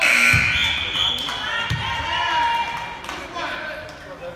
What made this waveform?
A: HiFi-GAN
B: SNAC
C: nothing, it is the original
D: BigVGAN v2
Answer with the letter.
C